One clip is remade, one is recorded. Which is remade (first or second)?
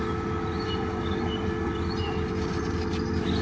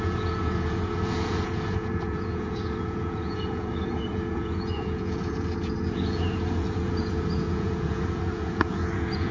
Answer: second